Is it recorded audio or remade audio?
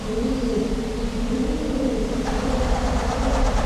remade